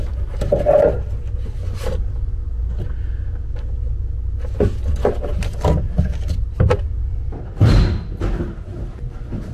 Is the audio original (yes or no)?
yes